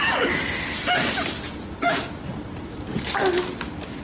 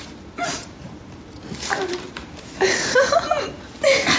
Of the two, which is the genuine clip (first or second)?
first